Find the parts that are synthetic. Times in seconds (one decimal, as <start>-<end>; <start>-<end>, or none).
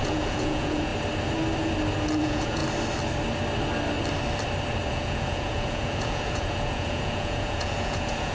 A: 0.0-0.9; 2.2-2.6; 4.9-8.3